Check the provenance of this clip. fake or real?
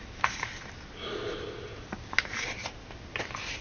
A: real